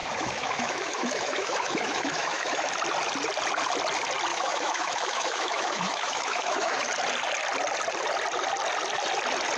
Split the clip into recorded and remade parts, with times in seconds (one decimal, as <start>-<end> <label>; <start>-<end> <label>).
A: 0.0-2.7 remade; 2.7-4.3 recorded; 4.3-6.9 remade; 6.9-9.6 recorded